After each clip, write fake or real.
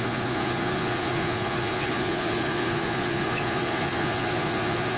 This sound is fake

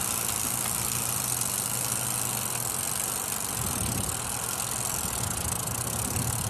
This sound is real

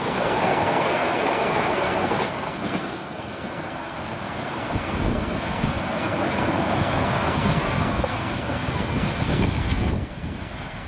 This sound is fake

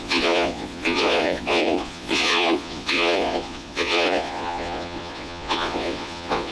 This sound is fake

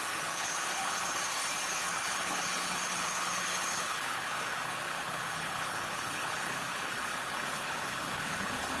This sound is fake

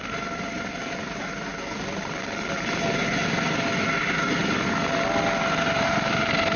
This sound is real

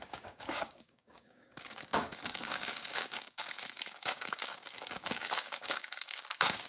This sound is fake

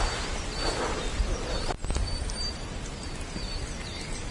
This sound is real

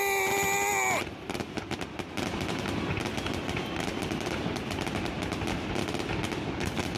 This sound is real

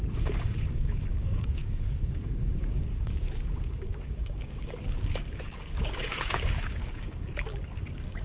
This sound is fake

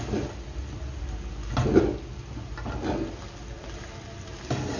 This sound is real